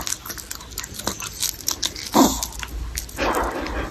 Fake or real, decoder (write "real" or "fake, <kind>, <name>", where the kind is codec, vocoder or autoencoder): real